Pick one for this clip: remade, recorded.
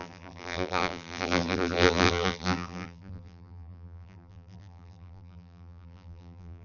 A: remade